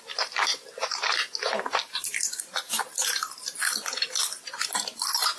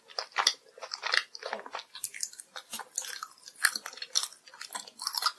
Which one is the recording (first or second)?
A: second